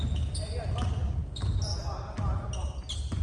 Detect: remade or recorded recorded